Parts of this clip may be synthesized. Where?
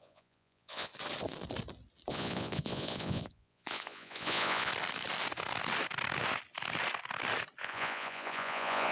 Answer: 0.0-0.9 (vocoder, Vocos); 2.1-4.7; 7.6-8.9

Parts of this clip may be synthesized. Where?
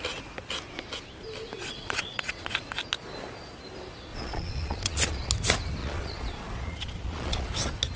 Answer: 1.6-2.7 (vocoder, Vocos); 4.1-5.3; 5.8-7.5